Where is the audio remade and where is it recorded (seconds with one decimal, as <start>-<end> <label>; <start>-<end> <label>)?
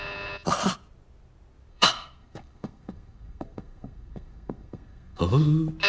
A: 0.0-1.7 recorded; 1.7-5.2 remade; 5.2-5.9 recorded